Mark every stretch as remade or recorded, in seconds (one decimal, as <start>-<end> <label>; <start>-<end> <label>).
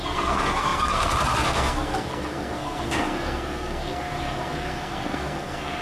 0.0-5.8 remade